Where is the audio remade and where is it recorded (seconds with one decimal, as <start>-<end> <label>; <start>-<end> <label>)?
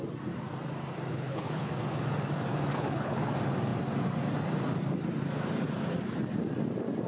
0.0-1.1 recorded; 1.1-1.7 remade; 1.7-2.7 recorded; 2.7-3.3 remade; 3.3-7.1 recorded